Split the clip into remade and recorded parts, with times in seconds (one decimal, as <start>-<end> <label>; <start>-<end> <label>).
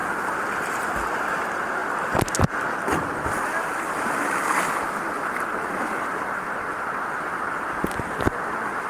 0.0-0.9 remade; 0.9-5.5 recorded; 5.5-6.4 remade; 6.4-8.9 recorded